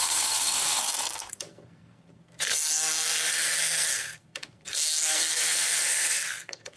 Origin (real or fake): fake